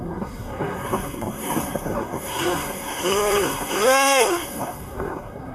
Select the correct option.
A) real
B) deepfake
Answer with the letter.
B